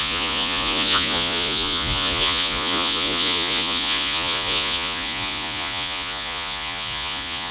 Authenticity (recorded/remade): remade